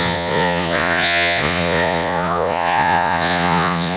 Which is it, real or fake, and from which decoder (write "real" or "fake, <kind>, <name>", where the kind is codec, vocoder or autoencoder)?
fake, vocoder, Vocos